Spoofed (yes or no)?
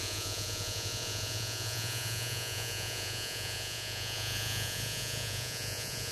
yes